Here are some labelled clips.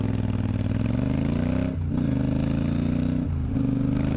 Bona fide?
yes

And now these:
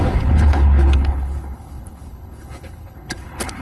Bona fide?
no